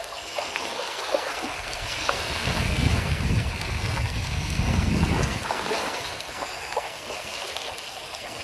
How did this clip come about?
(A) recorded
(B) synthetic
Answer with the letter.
B